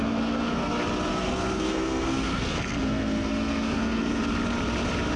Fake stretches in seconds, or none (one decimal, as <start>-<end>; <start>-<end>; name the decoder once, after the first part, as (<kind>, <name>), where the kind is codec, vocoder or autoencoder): 0.0-0.7 (codec, SNAC); 1.1-4.2